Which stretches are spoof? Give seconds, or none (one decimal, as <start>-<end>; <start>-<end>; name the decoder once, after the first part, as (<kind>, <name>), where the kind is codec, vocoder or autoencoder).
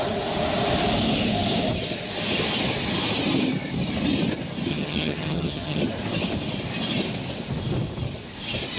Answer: 4.7-5.8 (vocoder, HiFi-GAN)